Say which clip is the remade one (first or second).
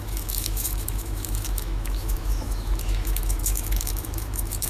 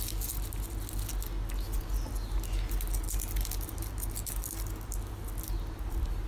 first